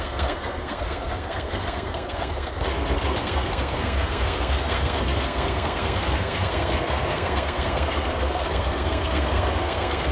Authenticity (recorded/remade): remade